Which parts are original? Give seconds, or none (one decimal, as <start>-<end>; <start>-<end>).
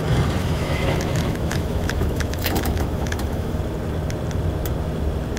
0.0-0.4; 3.6-5.4